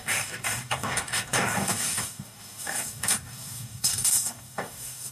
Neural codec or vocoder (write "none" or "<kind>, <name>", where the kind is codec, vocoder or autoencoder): codec, DAC